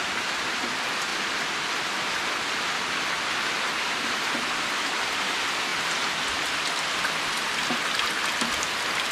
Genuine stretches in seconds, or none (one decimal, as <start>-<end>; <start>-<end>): 0.0-9.1